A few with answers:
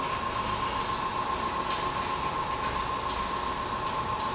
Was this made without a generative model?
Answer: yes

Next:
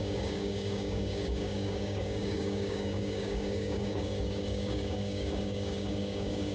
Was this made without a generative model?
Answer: no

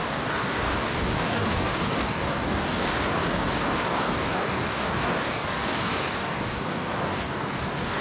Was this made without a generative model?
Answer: no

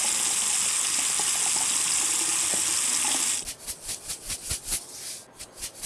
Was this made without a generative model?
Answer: yes